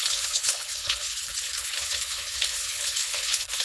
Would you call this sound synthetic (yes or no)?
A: yes